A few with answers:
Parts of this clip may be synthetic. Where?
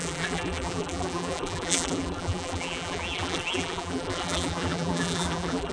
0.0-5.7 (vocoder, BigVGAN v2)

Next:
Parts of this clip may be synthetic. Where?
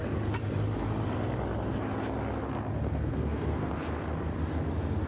2.9-3.7 (codec, SNAC)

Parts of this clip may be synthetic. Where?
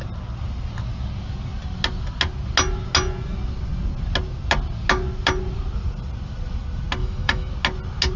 7.0-7.5 (autoencoder, DAC-VAE)